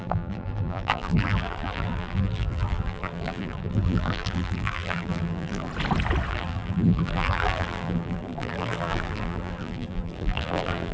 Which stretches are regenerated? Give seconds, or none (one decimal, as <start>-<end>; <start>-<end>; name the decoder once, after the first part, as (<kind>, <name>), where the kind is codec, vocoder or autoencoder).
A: 0.0-5.7 (vocoder, BigVGAN v2); 6.3-10.9